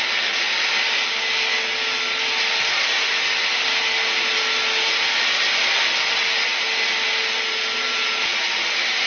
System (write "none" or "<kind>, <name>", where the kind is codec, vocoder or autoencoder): none